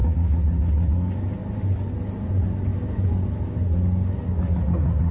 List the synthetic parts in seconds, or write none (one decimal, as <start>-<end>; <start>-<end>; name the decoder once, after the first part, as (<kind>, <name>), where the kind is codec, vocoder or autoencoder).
none